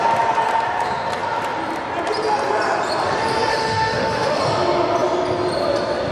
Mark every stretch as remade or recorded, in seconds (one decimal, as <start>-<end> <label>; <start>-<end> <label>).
0.0-3.5 recorded; 3.5-4.4 remade; 4.4-6.1 recorded